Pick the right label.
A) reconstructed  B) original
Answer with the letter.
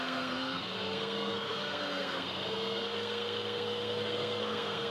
A